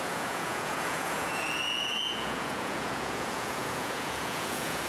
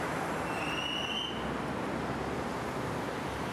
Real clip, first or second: second